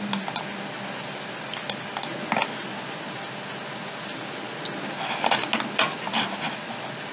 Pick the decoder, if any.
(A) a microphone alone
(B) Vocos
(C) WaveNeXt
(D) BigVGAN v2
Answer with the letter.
A